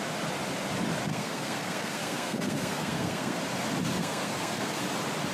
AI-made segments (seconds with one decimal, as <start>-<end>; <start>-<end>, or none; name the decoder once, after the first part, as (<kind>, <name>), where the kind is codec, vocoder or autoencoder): 1.1-3.4 (codec, SNAC); 4.0-4.8